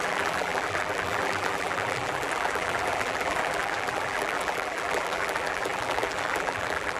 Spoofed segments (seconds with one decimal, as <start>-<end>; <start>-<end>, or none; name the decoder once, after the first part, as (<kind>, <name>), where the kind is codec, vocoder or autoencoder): 0.0-7.0 (vocoder, BigVGAN v2)